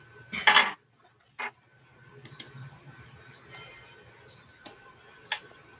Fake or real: real